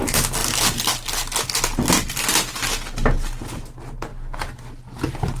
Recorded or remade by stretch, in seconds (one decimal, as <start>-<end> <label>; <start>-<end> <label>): 0.0-5.4 recorded